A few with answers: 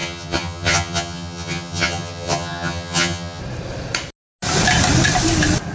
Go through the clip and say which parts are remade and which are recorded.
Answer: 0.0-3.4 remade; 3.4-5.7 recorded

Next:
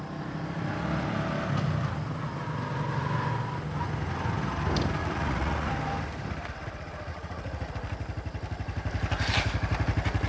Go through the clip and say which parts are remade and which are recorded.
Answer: 0.0-5.0 recorded; 5.0-5.7 remade; 5.7-7.1 recorded; 7.1-7.7 remade; 7.7-10.3 recorded

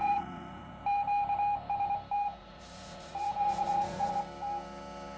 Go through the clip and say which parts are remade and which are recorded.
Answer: 0.0-0.8 remade; 0.8-2.4 recorded; 2.4-4.1 remade; 4.1-5.2 recorded

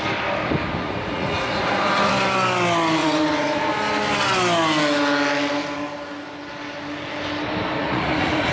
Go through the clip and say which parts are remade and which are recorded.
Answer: 0.0-0.8 recorded; 0.8-2.1 remade; 2.1-3.0 recorded; 3.0-3.7 remade; 3.7-7.8 recorded; 7.8-8.5 remade

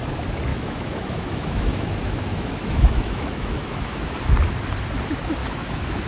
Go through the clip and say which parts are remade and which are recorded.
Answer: 0.0-0.5 recorded; 0.5-4.2 remade; 4.2-5.4 recorded; 5.4-6.1 remade

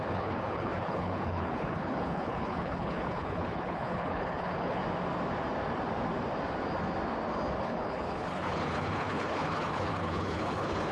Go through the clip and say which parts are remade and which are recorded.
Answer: 0.0-4.8 remade; 4.8-7.6 recorded; 7.6-10.9 remade

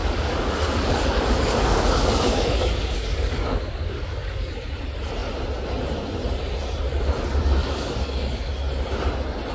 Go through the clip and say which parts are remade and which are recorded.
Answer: 0.0-4.5 remade; 4.5-7.6 recorded; 7.6-8.5 remade; 8.5-9.5 recorded

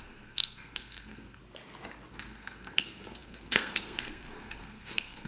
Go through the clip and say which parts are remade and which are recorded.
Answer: 0.0-1.4 remade; 1.4-2.1 recorded; 2.1-5.3 remade